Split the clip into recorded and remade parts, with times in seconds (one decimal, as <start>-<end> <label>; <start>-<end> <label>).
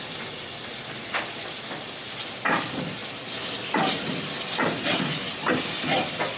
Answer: 0.0-6.4 recorded